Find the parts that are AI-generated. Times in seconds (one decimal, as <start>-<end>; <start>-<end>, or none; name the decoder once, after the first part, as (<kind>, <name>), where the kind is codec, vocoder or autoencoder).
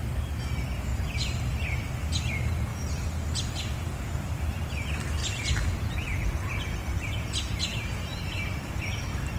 0.9-1.6 (vocoder, BigVGAN v2); 2.7-3.4; 5.2-5.8